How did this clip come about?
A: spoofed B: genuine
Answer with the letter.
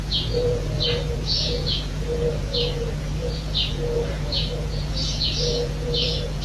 A